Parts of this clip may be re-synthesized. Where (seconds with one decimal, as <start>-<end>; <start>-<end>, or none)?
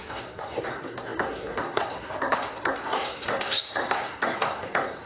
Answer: 0.0-5.1